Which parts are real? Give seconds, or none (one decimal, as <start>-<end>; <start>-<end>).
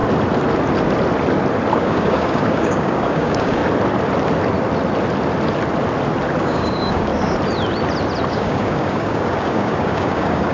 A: 0.0-1.8; 3.6-6.4; 7.1-8.3